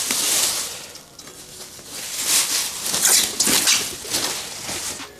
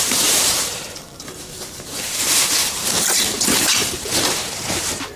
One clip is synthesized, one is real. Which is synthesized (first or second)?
second